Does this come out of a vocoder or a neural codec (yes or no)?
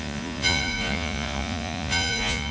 yes